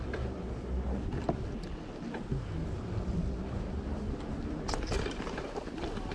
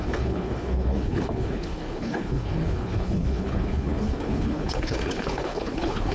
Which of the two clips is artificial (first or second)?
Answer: second